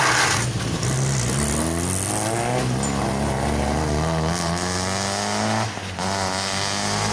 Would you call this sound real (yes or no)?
yes